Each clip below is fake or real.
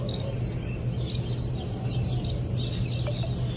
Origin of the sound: real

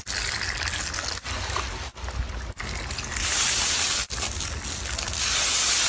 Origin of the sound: real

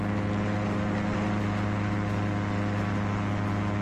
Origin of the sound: real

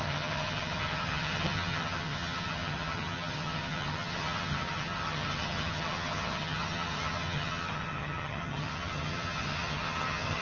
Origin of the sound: fake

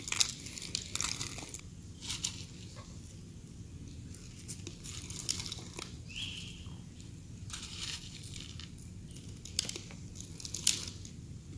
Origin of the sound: real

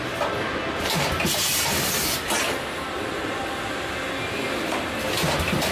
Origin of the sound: real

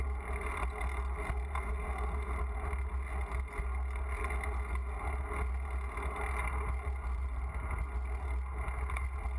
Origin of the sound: real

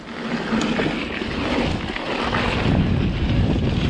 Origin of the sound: real